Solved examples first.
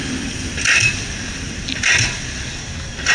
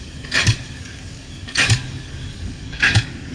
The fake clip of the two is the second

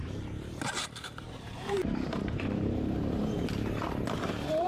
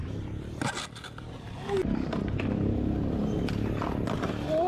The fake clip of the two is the first